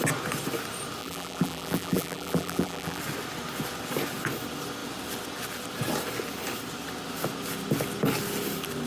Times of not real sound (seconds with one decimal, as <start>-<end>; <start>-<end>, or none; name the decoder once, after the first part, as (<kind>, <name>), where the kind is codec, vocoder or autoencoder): 1.0-3.0 (vocoder, BigVGAN v2)

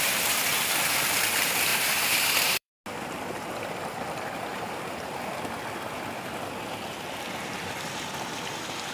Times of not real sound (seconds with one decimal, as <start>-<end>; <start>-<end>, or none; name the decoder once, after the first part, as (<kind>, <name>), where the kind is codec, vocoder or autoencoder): 1.7-2.7 (vocoder, BigVGAN v2); 4.5-5.3

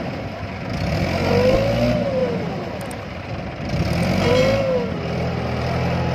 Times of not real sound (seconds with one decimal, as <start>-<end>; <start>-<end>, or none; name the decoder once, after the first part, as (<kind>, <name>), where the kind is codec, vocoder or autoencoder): none

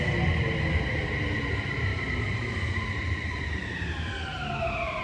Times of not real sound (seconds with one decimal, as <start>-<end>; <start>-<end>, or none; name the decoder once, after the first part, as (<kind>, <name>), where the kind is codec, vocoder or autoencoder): 1.9-5.0 (vocoder, BigVGAN v2)